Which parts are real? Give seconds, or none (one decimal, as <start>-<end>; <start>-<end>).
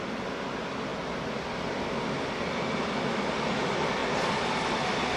0.0-5.2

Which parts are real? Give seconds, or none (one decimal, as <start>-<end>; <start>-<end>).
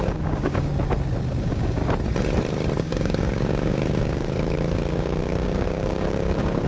0.7-1.4; 1.8-2.8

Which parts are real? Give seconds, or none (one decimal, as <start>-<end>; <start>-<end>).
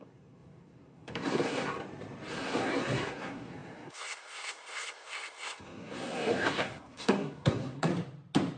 1.7-2.3; 7.9-8.6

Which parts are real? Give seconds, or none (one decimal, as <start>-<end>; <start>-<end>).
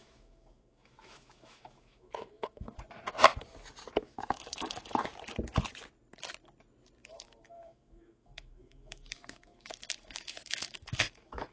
2.8-4.0; 5.1-7.0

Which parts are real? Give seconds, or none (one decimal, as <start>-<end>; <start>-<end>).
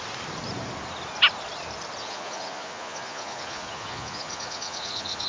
0.0-2.0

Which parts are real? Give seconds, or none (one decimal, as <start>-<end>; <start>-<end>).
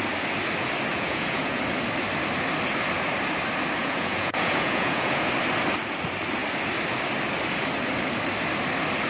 0.0-0.9; 1.6-3.8; 5.3-9.1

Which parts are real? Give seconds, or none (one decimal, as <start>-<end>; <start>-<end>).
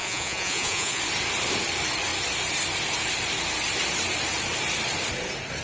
1.0-5.6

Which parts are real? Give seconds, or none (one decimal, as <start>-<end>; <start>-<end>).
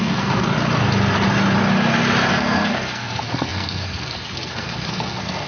0.5-2.3